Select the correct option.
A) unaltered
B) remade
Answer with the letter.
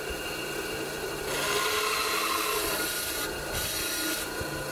A